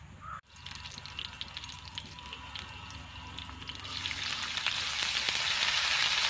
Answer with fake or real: real